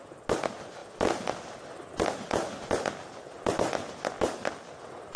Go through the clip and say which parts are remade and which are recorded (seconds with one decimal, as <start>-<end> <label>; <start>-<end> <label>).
0.0-5.2 recorded